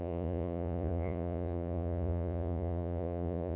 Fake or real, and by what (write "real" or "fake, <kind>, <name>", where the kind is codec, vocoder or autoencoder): fake, vocoder, Vocos